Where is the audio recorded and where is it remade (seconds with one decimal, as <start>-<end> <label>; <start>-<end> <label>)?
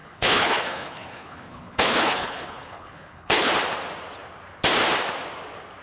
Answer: 0.0-3.5 remade; 3.5-5.8 recorded